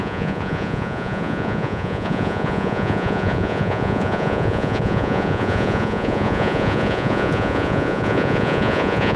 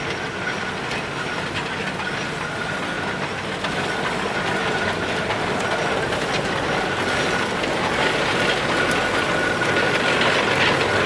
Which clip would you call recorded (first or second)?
second